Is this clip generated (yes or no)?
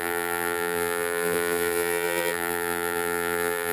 yes